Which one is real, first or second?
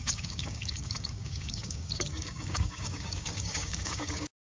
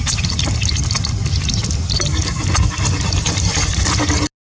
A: second